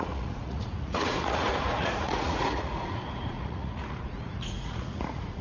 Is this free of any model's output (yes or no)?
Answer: no